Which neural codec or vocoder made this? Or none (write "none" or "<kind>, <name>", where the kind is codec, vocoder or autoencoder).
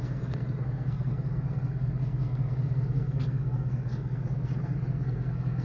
codec, SNAC